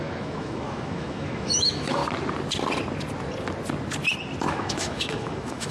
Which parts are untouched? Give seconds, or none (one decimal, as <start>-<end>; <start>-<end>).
2.0-4.4

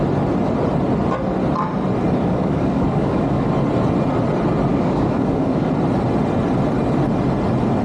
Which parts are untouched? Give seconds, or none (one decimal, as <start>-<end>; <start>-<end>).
0.0-2.2; 3.5-4.7; 5.7-7.8

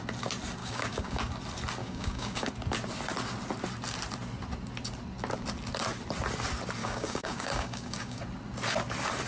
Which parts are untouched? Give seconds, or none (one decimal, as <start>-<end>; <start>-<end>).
0.0-0.6; 1.2-1.8; 2.5-6.8; 8.2-9.3

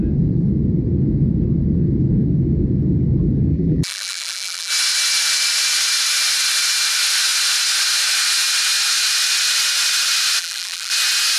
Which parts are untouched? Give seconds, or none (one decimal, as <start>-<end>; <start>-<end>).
0.0-3.5; 4.7-10.4; 10.9-11.4

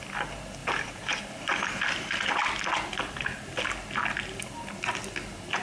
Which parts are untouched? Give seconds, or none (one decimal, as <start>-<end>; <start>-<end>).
0.0-0.6; 1.2-5.6